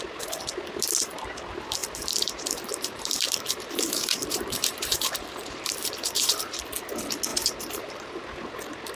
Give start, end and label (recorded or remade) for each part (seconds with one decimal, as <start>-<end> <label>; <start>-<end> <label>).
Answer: 0.0-1.8 recorded; 1.8-6.6 remade; 6.6-7.3 recorded; 7.3-8.2 remade; 8.2-9.0 recorded